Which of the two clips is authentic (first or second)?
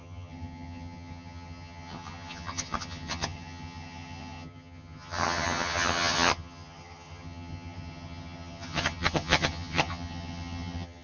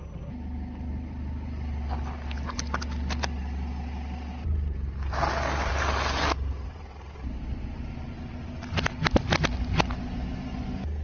second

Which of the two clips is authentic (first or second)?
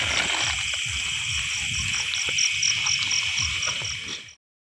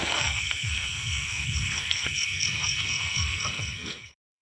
first